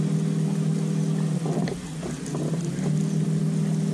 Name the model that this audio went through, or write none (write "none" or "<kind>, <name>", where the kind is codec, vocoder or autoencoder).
none